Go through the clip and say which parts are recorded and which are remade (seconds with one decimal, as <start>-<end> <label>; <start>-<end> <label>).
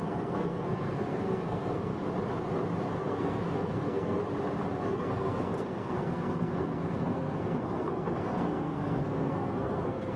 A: 0.0-1.9 remade; 1.9-2.9 recorded; 2.9-4.2 remade; 4.2-4.8 recorded; 4.8-10.2 remade